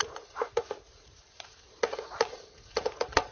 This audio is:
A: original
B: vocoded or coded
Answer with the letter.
B